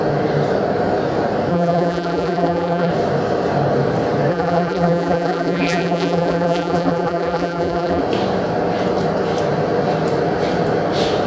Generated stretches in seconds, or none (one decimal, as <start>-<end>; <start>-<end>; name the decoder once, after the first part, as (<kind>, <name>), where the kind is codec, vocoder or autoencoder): 1.5-2.9 (vocoder, BigVGAN v2); 4.3-8.0